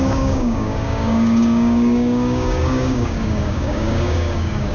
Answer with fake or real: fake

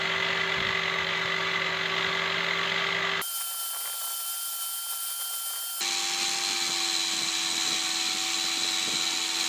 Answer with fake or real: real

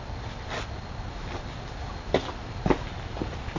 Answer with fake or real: real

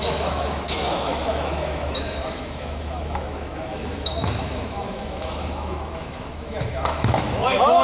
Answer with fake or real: fake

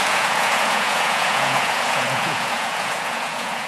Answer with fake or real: fake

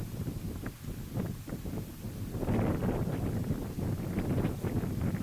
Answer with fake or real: real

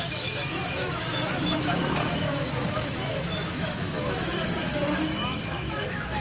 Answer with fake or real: fake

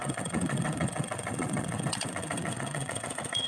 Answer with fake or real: fake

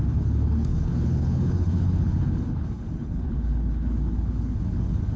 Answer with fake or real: fake